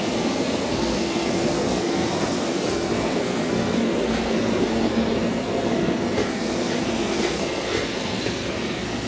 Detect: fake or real fake